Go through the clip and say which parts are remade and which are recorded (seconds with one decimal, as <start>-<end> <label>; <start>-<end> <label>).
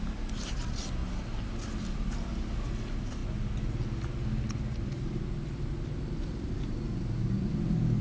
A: 0.0-8.0 recorded